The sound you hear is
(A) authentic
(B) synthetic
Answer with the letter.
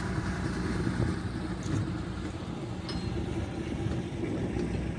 A